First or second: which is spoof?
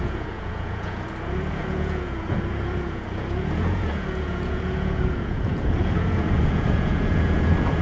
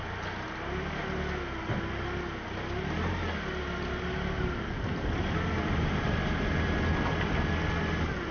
first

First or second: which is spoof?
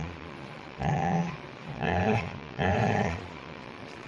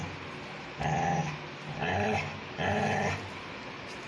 first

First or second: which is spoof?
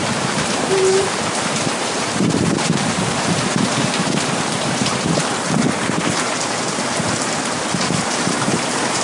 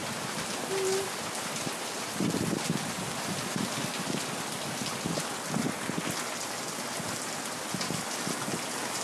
first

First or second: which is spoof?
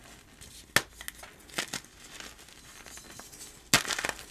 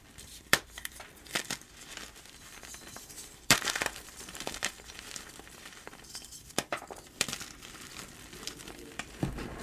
second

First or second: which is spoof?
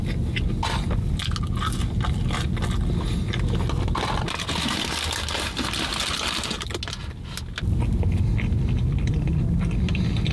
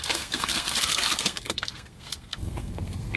second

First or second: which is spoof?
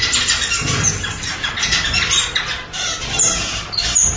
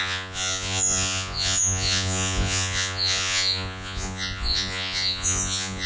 second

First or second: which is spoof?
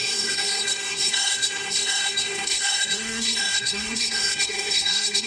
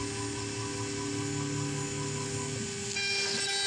first